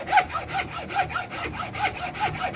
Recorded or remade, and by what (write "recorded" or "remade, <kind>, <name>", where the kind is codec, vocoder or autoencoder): recorded